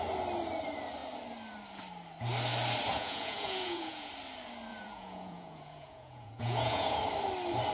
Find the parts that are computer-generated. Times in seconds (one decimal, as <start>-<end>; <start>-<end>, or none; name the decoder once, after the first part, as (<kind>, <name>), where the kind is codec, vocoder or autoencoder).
2.9-4.1 (vocoder, Vocos); 4.7-7.0